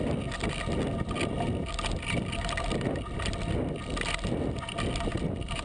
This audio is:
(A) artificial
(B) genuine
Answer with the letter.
B